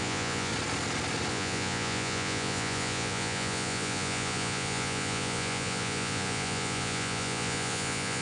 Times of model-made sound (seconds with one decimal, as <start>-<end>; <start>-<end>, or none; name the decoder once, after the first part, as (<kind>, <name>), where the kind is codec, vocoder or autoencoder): 0.0-0.5 (vocoder, Vocos); 1.3-8.2